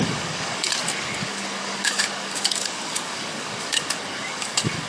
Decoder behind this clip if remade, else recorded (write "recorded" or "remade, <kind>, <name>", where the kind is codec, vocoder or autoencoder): remade, codec, DAC